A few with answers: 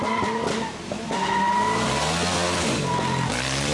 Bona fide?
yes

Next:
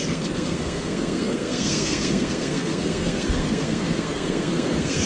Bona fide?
no